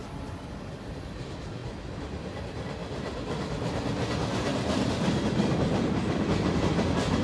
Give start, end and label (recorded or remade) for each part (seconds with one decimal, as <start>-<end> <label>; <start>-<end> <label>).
0.0-7.2 recorded